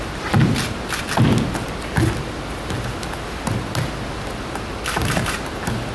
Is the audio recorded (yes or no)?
yes